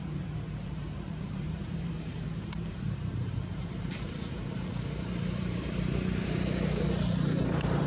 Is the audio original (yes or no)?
no